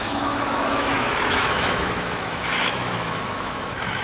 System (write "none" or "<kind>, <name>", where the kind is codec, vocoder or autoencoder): autoencoder, DAC-VAE